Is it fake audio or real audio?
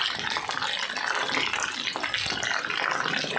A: real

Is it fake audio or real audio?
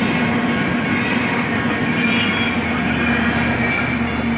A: real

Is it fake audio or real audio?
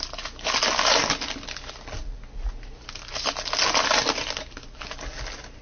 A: real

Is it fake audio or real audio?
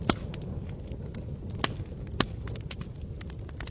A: real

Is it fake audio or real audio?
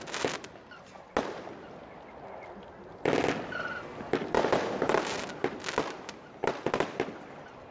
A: real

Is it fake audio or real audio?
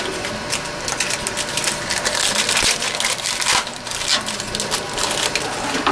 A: real